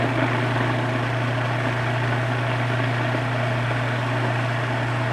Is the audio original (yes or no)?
yes